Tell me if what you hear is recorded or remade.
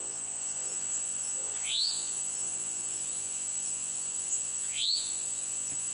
remade